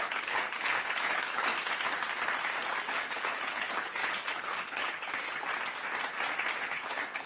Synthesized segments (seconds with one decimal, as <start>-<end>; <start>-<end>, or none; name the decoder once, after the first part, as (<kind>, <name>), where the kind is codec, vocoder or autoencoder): 0.0-1.5 (codec, HILCodec); 2.8-5.5; 6.6-7.3